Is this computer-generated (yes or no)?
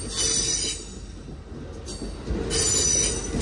no